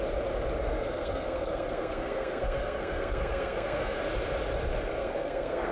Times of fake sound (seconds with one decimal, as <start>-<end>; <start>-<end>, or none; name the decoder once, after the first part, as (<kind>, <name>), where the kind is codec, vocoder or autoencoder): 0.6-4.0 (codec, SNAC); 4.9-5.7